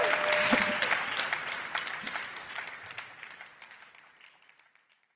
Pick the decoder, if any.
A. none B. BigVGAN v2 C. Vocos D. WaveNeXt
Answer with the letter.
A